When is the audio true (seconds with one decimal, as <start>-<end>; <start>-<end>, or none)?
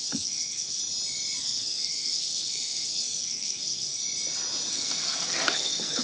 0.8-1.4; 4.0-4.7